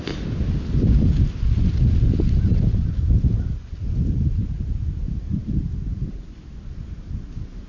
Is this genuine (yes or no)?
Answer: yes